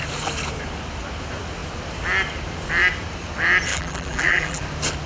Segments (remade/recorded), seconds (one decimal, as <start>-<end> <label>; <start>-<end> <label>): 0.0-3.7 recorded; 3.7-4.6 remade; 4.6-5.1 recorded